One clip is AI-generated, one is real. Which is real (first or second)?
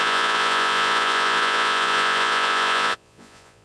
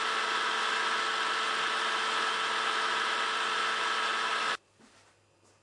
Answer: second